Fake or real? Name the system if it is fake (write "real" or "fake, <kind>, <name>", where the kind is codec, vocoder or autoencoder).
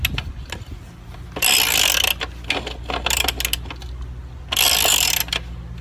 real